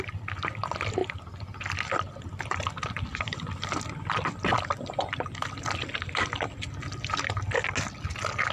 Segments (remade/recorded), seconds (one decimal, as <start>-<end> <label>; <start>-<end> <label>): 0.0-8.5 recorded